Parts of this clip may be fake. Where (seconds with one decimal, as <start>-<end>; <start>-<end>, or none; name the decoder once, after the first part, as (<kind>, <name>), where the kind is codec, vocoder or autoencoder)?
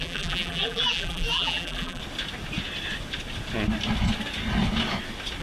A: 0.0-2.0 (vocoder, BigVGAN v2)